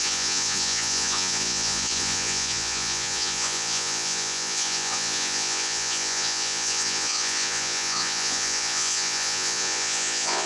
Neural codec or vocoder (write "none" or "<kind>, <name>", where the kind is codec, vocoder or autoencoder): vocoder, Vocos